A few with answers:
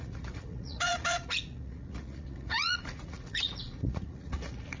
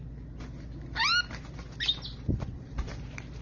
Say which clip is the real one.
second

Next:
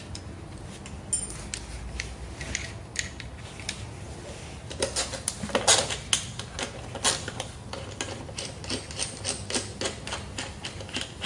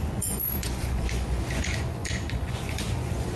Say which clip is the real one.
first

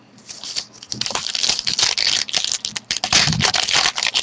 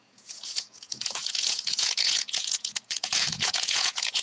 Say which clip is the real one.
first